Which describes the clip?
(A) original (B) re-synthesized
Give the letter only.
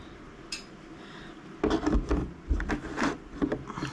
A